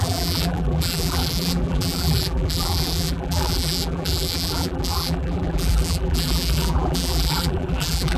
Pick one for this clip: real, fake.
fake